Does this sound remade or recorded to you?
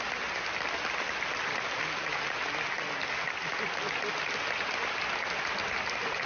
recorded